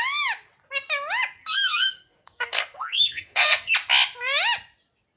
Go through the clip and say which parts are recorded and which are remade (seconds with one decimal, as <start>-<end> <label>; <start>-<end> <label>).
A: 0.0-1.4 recorded; 1.4-3.7 remade; 3.7-5.2 recorded